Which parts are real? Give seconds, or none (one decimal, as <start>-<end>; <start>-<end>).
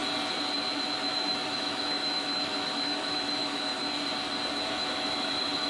0.0-1.0; 3.7-4.7